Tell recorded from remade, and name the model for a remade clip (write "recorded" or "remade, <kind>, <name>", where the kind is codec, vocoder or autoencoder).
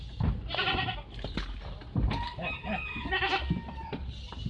recorded